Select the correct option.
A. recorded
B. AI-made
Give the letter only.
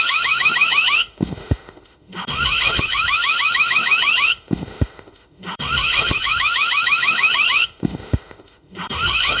B